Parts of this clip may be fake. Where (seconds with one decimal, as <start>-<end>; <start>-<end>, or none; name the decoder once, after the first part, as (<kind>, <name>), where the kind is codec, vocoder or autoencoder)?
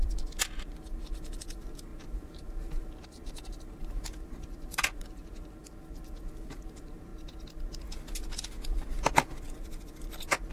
0.0-7.1 (vocoder, BigVGAN v2); 7.7-10.5